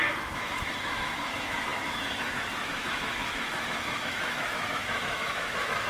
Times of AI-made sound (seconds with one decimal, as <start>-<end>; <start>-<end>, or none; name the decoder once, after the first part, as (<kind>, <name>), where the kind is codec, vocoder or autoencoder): 0.0-5.9 (autoencoder, DAC-VAE)

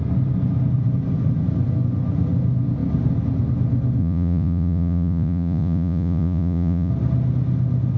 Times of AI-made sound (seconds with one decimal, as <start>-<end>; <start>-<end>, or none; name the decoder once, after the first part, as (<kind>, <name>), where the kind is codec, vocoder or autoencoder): 4.0-6.9 (vocoder, Vocos)

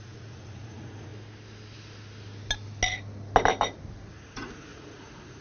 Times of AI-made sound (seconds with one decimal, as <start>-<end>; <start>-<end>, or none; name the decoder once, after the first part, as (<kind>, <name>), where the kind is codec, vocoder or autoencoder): 0.0-1.1 (vocoder, Vocos); 4.1-5.4

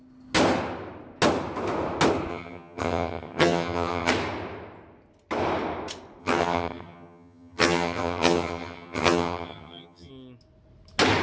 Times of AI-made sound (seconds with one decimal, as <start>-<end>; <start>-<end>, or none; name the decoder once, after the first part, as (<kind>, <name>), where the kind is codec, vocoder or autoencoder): 2.3-4.1 (vocoder, HiFi-GAN); 6.2-10.1

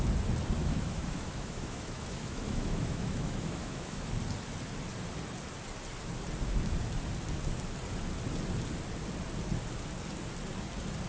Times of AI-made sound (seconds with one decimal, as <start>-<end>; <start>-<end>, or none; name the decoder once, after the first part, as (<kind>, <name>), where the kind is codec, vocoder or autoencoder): 0.6-4.1 (autoencoder, DAC-VAE)